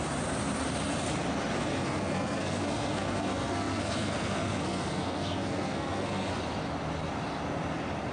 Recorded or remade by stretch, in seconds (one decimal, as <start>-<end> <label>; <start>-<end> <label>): 0.0-1.6 recorded; 1.6-6.4 remade; 6.4-8.1 recorded